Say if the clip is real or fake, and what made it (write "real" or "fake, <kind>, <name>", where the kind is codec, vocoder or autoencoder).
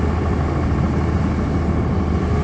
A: real